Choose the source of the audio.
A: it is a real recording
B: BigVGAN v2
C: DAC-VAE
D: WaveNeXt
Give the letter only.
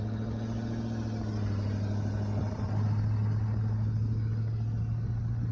A